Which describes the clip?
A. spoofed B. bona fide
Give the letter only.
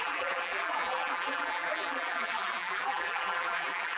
A